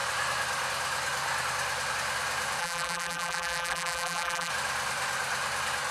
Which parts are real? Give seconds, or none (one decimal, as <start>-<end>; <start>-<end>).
0.0-2.6; 4.5-5.9